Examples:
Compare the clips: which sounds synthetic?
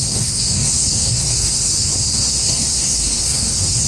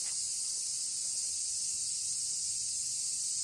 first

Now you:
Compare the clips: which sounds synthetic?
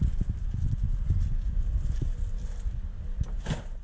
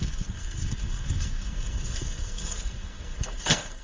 second